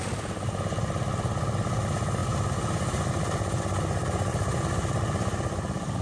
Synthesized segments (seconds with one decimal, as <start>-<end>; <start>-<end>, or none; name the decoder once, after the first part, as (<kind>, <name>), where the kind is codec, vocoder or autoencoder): none